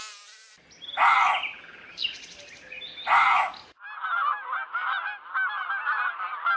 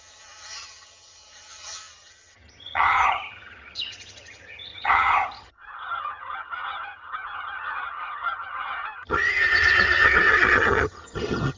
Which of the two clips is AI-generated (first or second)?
second